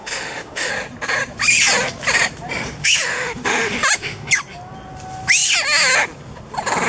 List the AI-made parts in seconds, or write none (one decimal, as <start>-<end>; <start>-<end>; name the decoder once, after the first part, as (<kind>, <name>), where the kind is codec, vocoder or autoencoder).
0.0-0.7 (autoencoder, DAC-VAE); 2.8-4.3